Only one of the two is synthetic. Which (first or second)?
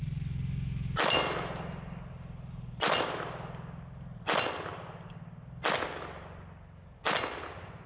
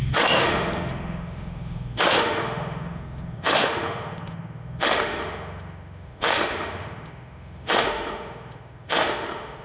second